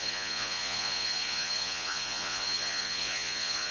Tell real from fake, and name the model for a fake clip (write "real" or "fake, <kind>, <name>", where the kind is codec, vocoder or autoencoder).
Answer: fake, vocoder, Vocos